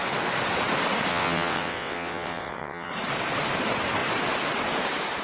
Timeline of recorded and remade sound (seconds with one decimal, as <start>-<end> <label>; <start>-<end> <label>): 0.0-1.1 recorded; 1.1-2.9 remade; 2.9-5.2 recorded